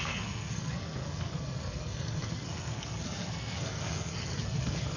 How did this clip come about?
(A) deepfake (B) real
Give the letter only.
A